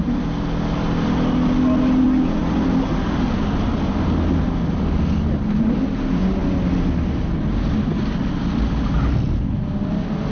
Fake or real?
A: real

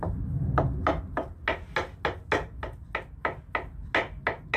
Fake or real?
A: real